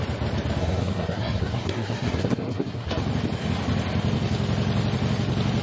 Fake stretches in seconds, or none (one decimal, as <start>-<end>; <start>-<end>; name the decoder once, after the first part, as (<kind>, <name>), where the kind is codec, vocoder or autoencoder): 0.6-2.9 (codec, SNAC)